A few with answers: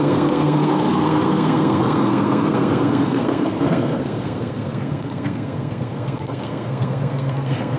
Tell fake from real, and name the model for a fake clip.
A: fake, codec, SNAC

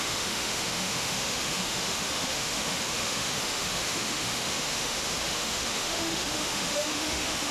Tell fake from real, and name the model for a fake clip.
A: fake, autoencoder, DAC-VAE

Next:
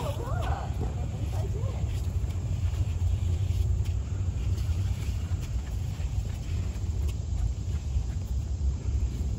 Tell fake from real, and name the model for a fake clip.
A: fake, vocoder, BigVGAN v2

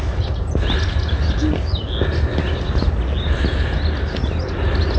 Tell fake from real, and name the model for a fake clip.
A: real